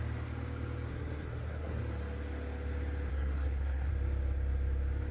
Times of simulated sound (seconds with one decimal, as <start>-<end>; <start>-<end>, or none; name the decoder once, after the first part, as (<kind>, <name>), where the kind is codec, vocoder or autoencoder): 0.9-1.8 (codec, SNAC); 3.1-3.9